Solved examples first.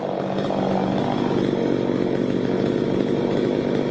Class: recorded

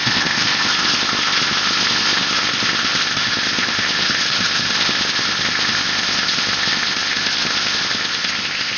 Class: remade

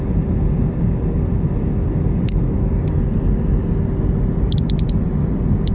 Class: recorded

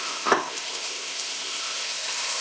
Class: remade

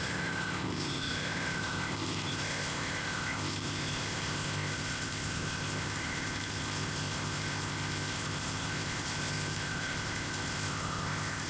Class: remade